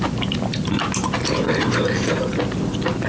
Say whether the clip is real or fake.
real